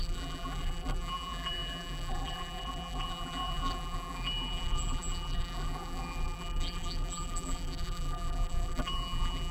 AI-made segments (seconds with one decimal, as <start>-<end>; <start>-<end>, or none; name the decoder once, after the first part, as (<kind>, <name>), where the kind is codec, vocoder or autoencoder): 0.0-9.5 (vocoder, BigVGAN v2)